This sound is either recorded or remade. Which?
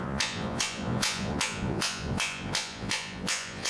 remade